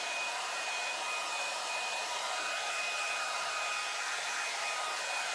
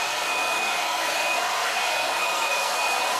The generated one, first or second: second